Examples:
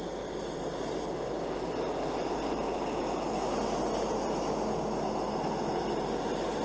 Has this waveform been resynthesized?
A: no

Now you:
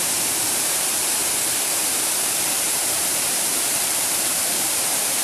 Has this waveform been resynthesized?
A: yes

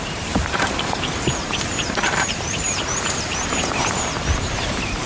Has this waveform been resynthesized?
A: yes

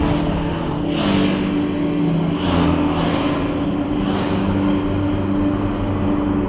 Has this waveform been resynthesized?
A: no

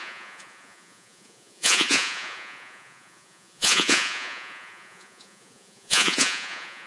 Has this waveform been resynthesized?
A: yes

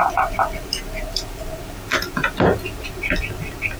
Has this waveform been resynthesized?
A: no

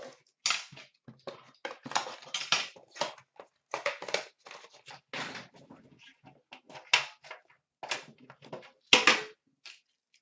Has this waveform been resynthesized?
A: no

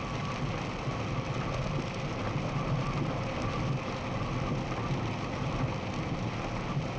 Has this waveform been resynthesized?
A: no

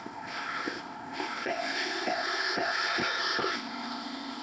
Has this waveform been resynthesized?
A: yes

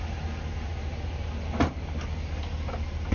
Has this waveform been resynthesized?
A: no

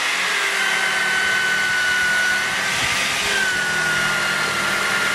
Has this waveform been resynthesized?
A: no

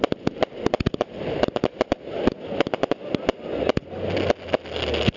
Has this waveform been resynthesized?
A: no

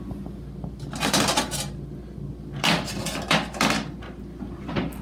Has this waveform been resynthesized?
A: no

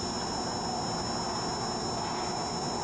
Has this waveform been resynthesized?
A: no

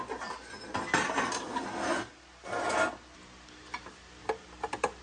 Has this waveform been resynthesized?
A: no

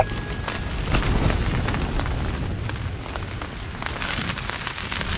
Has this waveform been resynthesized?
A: no